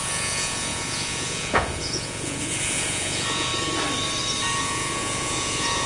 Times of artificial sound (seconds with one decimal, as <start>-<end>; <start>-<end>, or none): 0.0-3.5; 4.6-5.9